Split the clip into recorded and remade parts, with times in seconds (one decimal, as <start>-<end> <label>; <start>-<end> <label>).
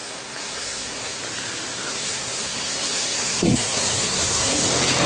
0.0-1.2 remade; 1.2-1.9 recorded; 1.9-4.6 remade; 4.6-5.1 recorded